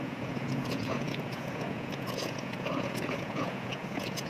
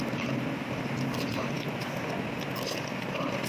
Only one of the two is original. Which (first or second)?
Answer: second